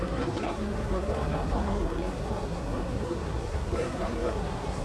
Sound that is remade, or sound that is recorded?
remade